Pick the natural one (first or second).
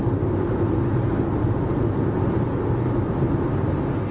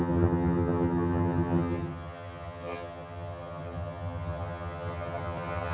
first